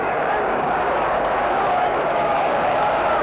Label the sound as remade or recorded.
remade